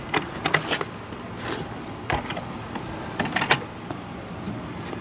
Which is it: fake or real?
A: fake